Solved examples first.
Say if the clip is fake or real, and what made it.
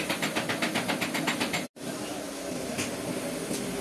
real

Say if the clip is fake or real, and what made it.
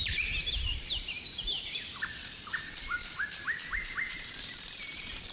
fake, vocoder, BigVGAN v2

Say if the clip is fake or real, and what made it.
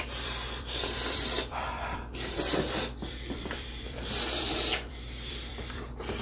fake, vocoder, BigVGAN v2